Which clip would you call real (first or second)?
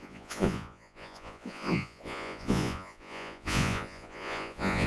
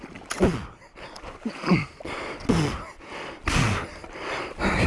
second